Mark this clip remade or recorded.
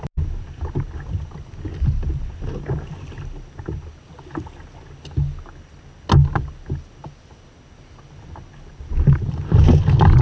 recorded